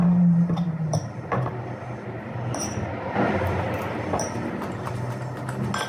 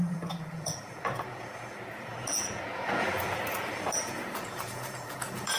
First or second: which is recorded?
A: first